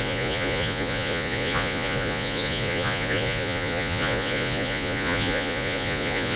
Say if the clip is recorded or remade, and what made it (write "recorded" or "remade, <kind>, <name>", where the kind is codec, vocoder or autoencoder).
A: remade, vocoder, Vocos